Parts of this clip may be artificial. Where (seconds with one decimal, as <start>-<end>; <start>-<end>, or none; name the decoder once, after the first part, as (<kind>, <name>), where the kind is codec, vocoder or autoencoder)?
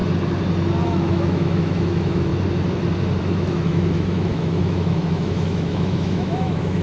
0.8-2.3 (autoencoder, DAC-VAE); 3.2-6.8